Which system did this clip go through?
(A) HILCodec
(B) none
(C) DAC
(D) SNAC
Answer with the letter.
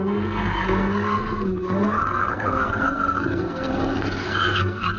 D